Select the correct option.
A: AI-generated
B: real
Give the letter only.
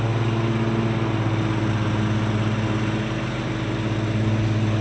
B